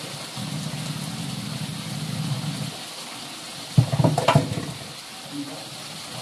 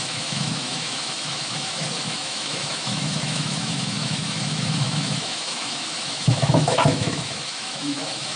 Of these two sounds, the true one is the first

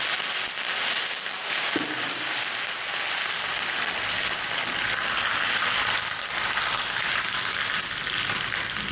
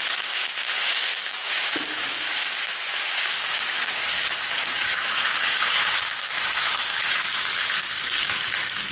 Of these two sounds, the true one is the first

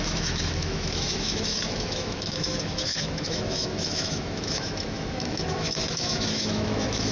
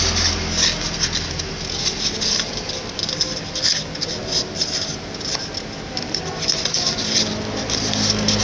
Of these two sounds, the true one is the second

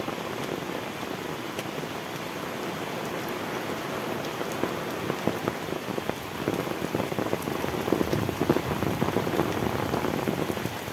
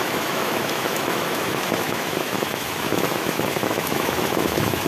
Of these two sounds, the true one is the first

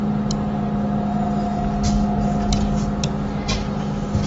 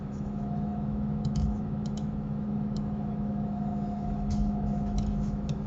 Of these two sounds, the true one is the first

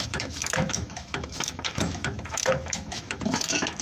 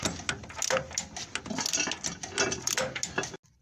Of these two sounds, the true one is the second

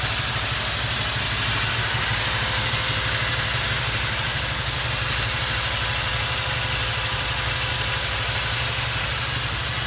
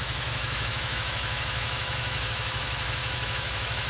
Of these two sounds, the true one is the first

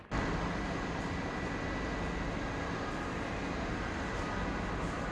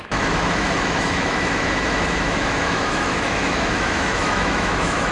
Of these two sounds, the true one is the first